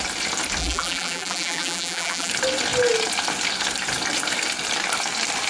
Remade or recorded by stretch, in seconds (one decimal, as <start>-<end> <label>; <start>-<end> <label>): 0.0-0.6 recorded; 0.6-2.3 remade; 2.3-5.5 recorded